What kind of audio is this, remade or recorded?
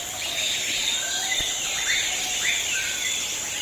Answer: recorded